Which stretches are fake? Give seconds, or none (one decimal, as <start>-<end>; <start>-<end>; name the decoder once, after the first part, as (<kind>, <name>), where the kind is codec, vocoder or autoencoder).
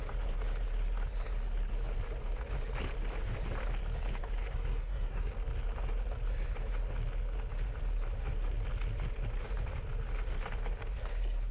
4.4-5.3 (codec, SNAC)